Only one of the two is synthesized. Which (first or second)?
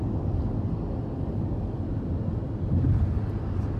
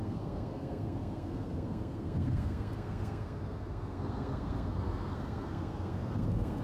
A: second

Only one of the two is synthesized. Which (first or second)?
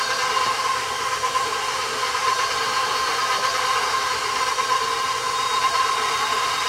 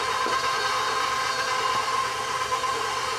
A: first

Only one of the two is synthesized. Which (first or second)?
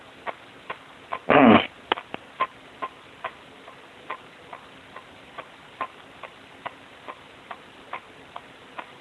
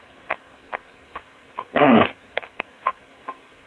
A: second